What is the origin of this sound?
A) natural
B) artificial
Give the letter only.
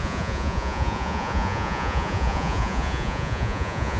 B